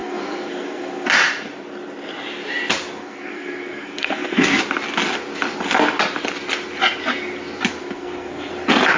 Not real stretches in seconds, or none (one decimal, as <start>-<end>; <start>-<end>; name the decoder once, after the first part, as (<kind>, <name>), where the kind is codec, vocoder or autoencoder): 0.0-1.1 (codec, SNAC); 3.0-4.6; 7.8-8.5